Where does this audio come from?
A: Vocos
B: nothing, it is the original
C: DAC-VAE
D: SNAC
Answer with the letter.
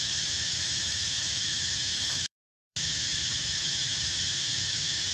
C